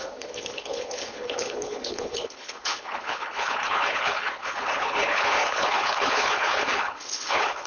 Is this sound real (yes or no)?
no